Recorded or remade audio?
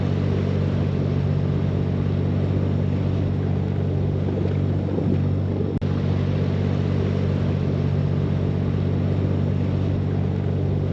recorded